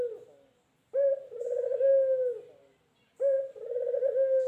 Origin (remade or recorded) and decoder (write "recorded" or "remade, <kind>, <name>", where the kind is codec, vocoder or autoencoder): recorded